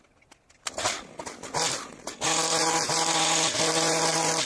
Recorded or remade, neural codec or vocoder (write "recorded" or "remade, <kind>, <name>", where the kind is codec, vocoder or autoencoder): recorded